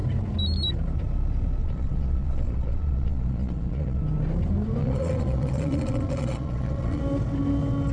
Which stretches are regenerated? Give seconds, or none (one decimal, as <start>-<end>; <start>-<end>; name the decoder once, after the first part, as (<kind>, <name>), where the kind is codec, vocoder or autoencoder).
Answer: 1.6-4.0 (vocoder, Vocos); 4.8-7.0